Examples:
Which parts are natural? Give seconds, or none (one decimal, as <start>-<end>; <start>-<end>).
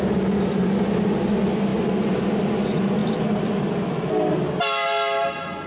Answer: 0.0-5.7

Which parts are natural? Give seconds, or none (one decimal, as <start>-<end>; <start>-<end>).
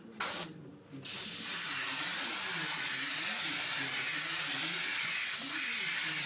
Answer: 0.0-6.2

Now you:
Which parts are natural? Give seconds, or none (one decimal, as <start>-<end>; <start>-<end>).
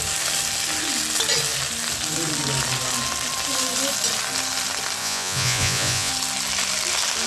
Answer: 0.0-5.0; 6.1-7.3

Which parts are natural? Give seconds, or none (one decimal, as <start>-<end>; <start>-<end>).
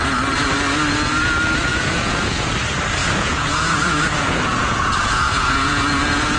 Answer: 0.0-1.7; 2.5-3.0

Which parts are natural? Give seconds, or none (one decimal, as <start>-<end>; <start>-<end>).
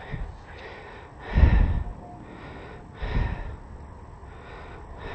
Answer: 0.0-5.1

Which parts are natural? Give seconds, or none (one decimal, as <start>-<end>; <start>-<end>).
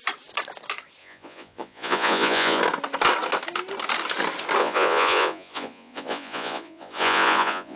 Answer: 0.0-1.0; 2.6-4.6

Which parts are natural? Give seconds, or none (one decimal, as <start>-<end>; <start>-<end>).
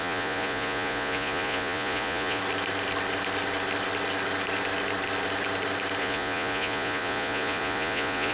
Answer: 2.4-6.0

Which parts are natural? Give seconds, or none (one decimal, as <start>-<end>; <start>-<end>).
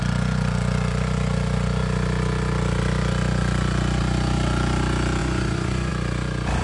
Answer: 0.0-5.2; 5.9-6.6